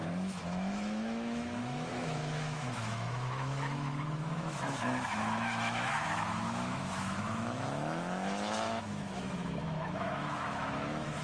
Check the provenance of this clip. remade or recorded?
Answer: remade